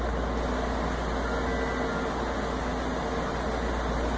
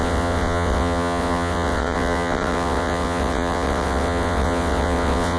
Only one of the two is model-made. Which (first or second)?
second